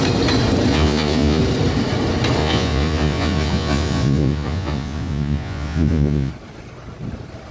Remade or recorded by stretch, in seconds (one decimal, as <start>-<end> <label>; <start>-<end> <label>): 0.0-0.7 recorded; 0.7-1.4 remade; 1.4-2.4 recorded; 2.4-6.3 remade; 6.3-7.5 recorded